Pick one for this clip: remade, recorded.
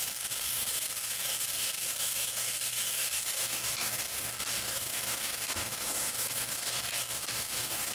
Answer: remade